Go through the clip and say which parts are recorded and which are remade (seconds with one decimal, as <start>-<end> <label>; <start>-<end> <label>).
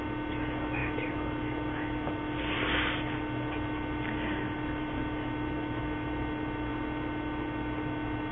0.0-8.3 recorded